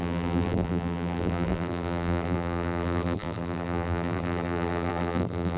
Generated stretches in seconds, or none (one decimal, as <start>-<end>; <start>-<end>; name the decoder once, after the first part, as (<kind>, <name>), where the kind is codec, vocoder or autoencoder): 0.0-5.6 (vocoder, BigVGAN v2)